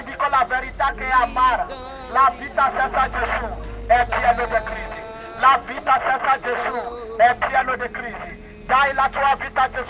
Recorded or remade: recorded